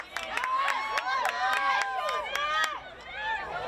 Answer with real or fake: real